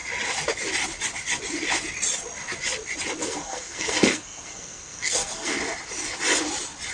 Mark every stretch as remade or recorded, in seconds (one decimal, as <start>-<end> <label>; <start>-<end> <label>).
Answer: 0.0-3.2 recorded; 3.2-5.6 remade; 5.6-6.9 recorded